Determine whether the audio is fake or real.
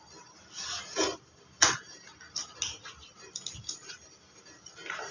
real